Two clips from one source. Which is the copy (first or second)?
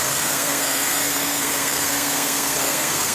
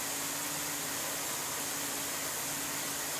first